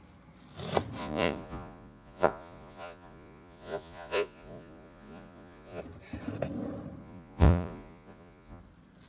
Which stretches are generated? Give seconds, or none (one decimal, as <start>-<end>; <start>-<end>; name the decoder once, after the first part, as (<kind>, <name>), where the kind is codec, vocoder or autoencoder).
1.0-5.8 (vocoder, Vocos); 7.0-8.6